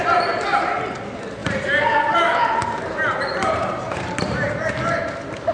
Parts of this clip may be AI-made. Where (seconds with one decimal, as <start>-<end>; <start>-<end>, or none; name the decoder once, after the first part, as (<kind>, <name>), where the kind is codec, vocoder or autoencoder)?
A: 1.4-4.7 (vocoder, BigVGAN v2)